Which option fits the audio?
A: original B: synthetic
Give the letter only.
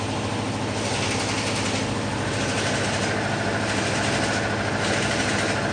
A